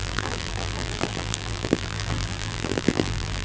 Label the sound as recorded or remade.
remade